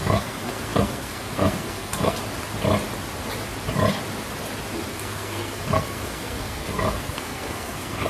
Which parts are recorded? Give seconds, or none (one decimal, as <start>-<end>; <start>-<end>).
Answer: 2.2-4.9